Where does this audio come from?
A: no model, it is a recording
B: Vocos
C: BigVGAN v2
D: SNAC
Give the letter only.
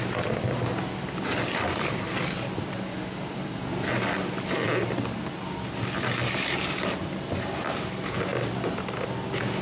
A